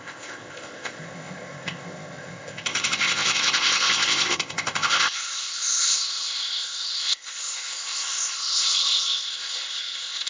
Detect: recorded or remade remade